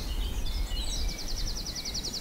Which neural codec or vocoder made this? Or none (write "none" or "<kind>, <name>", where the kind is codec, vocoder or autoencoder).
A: none